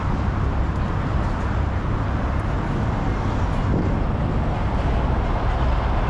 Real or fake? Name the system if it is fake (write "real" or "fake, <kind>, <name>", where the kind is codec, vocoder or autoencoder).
real